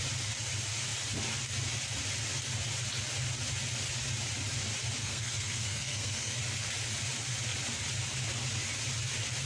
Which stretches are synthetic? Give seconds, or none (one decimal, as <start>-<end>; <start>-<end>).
5.0-6.4